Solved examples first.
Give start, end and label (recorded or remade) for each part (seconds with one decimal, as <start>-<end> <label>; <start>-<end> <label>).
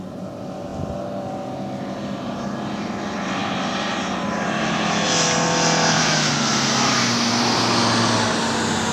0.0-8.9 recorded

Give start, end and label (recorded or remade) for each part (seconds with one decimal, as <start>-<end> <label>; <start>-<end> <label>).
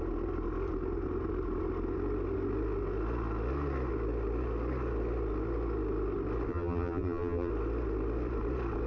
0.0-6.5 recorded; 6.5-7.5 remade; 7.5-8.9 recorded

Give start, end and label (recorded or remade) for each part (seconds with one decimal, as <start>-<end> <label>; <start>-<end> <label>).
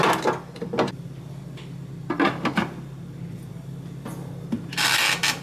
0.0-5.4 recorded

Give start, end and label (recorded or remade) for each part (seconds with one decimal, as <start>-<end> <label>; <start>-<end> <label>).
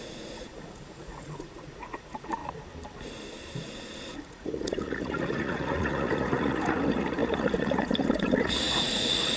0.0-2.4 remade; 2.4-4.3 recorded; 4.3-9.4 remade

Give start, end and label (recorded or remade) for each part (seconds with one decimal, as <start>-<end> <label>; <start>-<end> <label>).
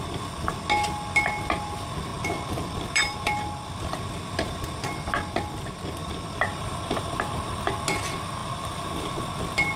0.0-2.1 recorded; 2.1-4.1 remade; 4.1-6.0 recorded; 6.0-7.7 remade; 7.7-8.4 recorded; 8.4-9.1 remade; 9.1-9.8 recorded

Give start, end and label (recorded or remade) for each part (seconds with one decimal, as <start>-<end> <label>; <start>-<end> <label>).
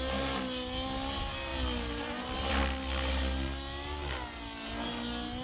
0.0-5.4 recorded